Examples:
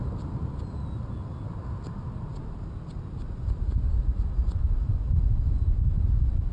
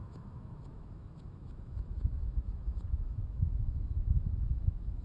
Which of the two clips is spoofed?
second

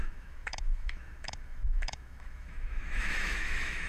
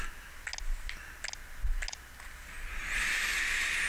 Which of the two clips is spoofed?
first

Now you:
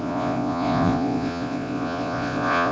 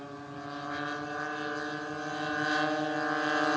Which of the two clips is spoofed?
first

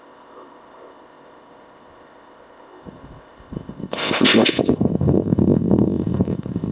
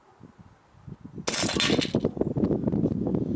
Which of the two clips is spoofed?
first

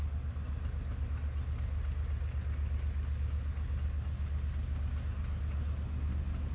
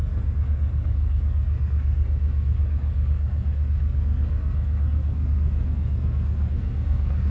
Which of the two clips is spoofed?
second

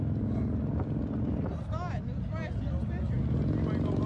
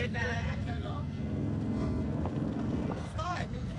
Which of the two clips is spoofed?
second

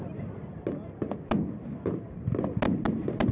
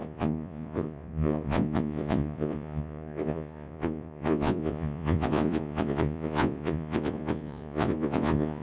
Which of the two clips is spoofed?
second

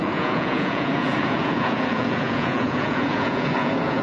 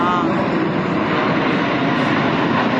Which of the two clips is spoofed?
first